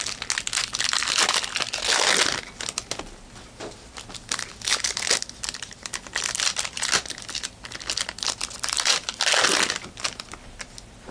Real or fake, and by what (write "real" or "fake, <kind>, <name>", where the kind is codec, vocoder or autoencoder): real